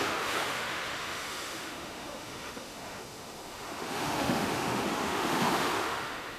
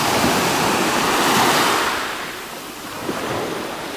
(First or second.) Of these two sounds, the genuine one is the second